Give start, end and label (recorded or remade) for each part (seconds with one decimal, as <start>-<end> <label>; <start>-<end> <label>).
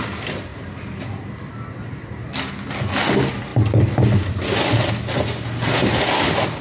0.0-0.5 recorded; 0.5-1.2 remade; 1.2-6.6 recorded